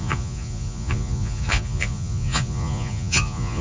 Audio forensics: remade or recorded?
remade